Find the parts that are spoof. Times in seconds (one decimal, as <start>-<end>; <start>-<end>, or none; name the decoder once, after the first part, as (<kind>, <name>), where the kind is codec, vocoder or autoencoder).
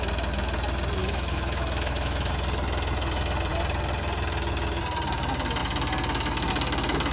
1.0-2.3 (autoencoder, DAC-VAE)